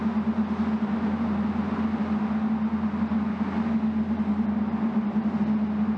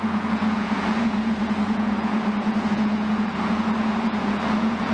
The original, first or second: first